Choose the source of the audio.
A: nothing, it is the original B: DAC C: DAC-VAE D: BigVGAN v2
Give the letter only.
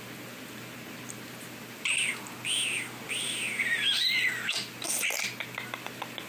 A